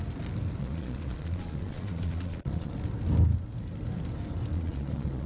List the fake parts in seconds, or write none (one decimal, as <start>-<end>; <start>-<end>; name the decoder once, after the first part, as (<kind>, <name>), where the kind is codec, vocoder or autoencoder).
0.6-2.7 (vocoder, Vocos); 4.5-5.3